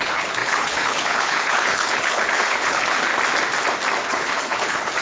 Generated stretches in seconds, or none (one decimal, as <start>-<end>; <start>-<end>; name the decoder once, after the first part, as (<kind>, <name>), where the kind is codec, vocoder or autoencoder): 0.0-3.1 (codec, HILCodec); 4.1-5.0